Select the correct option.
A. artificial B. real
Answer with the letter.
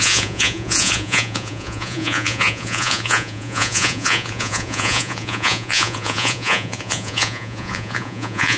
A